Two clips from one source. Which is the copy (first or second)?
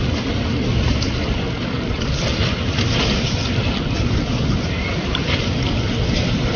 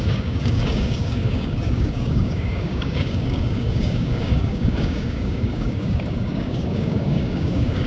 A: second